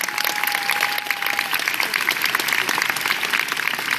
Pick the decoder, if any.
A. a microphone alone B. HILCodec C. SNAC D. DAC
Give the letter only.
A